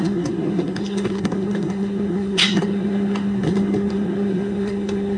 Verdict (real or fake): fake